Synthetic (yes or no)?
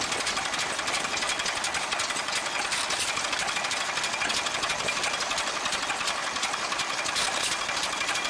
no